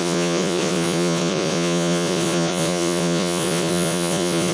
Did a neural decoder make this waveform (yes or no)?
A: yes